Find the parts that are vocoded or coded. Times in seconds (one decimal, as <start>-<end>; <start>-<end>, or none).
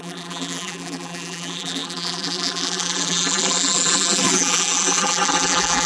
0.0-5.9